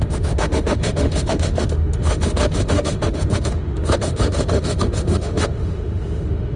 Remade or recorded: remade